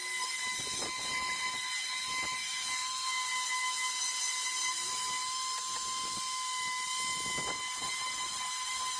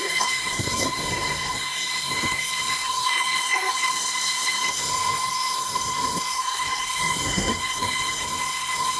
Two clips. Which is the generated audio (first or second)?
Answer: second